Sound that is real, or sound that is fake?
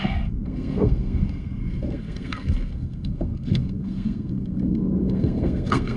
fake